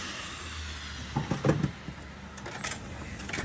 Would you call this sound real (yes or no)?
yes